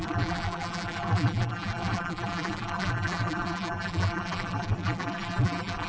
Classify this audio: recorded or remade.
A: remade